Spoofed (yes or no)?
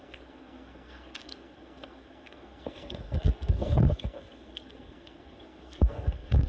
yes